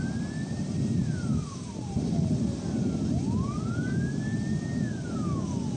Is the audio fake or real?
real